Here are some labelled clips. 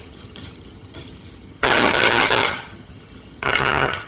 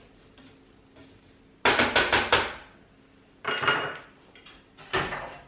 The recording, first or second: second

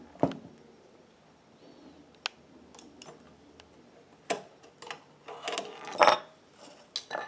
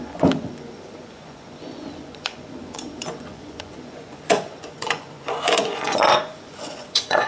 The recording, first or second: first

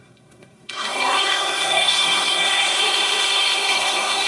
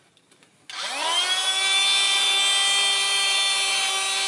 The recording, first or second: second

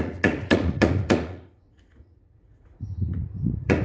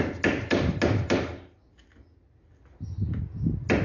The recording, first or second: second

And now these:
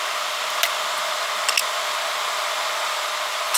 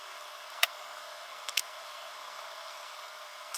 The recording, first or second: first